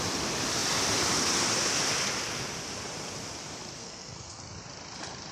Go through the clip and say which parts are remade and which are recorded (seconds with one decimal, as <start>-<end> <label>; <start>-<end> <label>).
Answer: 0.0-3.8 recorded; 3.8-4.4 remade; 4.4-5.3 recorded